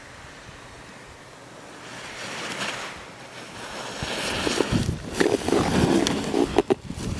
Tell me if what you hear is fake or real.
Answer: real